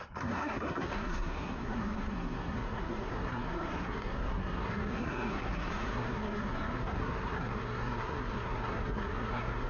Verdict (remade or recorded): remade